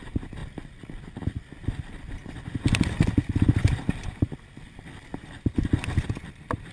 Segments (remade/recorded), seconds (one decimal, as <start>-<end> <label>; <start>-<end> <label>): 0.0-6.7 recorded